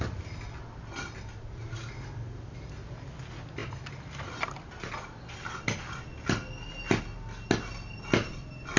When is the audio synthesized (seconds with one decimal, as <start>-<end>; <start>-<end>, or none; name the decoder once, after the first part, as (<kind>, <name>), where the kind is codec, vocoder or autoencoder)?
none